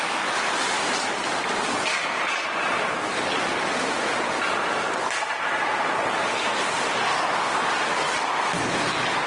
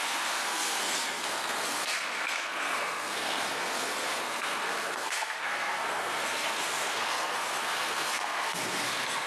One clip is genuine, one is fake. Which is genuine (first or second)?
first